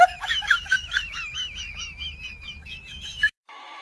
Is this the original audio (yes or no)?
no